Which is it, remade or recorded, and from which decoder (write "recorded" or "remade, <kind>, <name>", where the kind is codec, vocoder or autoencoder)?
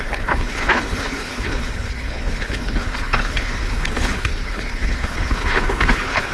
remade, codec, HILCodec